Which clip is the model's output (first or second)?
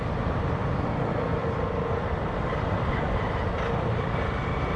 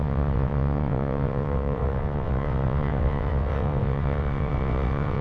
second